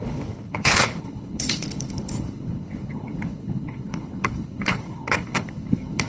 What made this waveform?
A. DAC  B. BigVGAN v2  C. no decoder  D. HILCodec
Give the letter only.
D